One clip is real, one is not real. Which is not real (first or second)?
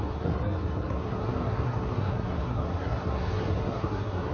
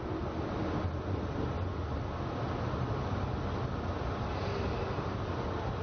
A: first